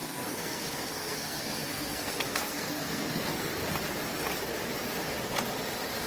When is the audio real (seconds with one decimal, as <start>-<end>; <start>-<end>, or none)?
3.6-6.1